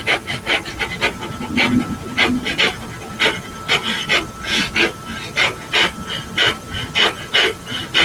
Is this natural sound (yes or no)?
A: yes